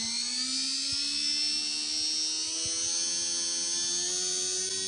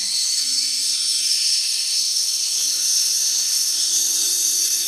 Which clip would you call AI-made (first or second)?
second